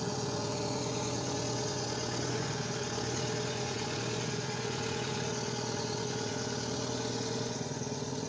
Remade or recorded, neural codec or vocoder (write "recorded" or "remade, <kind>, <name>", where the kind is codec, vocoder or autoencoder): remade, vocoder, Vocos